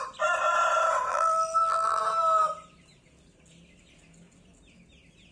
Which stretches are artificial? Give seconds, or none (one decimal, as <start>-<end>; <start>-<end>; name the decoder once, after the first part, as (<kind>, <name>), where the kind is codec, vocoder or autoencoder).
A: 1.1-2.0 (vocoder, BigVGAN v2)